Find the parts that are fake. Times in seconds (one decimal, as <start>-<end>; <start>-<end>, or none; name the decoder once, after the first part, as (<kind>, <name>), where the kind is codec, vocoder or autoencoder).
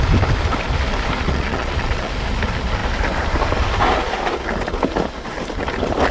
1.2-2.1 (vocoder, Vocos)